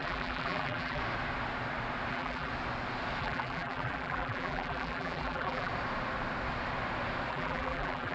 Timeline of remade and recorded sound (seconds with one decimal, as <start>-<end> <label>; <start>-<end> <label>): 0.0-1.0 remade; 1.0-2.1 recorded; 2.1-2.5 remade; 2.5-3.2 recorded; 3.2-5.7 remade; 5.7-7.3 recorded; 7.3-8.1 remade